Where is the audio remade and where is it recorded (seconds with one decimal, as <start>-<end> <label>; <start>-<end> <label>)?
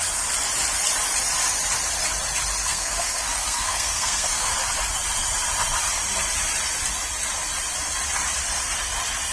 0.0-2.6 recorded; 2.6-4.5 remade; 4.5-9.3 recorded